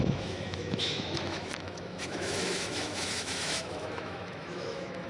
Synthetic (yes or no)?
yes